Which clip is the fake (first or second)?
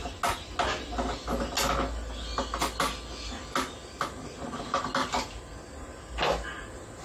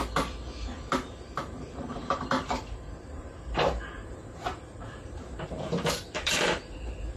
second